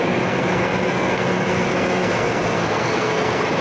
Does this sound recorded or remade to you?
remade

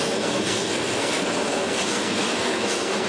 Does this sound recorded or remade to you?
remade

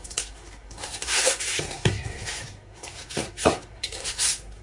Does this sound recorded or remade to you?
remade